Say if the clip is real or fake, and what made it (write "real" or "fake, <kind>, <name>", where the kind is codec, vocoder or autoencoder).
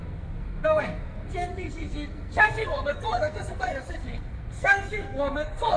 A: fake, codec, SNAC